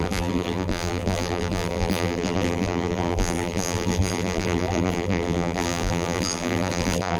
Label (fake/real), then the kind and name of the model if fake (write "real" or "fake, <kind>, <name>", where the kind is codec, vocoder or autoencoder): fake, vocoder, BigVGAN v2